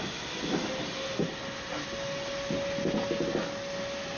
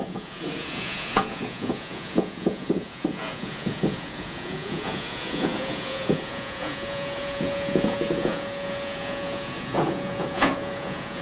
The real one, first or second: first